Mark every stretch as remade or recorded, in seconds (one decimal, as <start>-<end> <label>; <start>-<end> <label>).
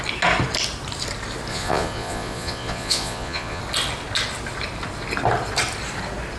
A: 0.0-1.5 recorded; 1.5-3.6 remade; 3.6-6.4 recorded